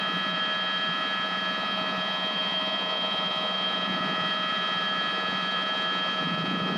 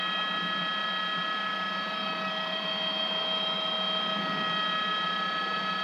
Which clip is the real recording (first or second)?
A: second